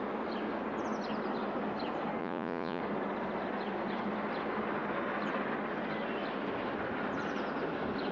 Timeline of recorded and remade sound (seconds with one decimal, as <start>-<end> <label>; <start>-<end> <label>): 0.0-2.2 recorded; 2.2-2.8 remade; 2.8-8.1 recorded